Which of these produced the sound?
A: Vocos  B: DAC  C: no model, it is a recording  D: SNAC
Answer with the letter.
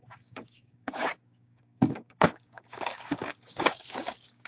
B